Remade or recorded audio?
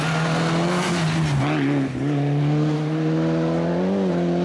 recorded